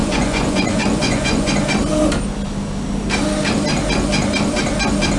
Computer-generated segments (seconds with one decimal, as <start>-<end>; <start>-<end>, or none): 0.0-1.5